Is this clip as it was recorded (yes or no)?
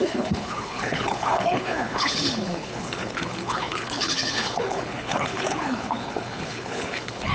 no